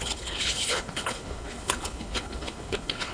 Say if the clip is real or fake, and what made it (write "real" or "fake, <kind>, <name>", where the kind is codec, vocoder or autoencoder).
fake, codec, HILCodec